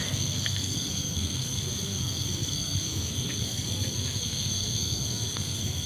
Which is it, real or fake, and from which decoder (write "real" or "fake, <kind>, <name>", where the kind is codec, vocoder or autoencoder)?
fake, codec, SNAC